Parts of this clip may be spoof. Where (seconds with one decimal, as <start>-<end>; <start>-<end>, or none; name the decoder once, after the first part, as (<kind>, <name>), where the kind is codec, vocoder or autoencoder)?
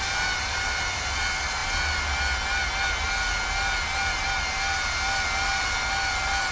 none